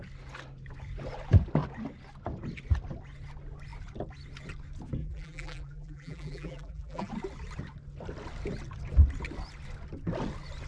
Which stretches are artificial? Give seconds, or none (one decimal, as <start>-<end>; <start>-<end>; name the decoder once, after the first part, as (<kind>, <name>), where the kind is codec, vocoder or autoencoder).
5.0-7.1 (vocoder, BigVGAN v2)